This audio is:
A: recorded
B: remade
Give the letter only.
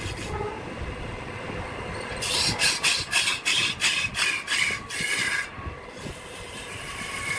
A